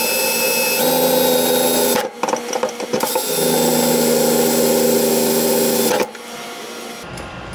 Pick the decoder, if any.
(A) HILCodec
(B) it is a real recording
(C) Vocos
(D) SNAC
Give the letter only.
B